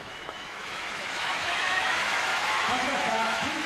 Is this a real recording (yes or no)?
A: no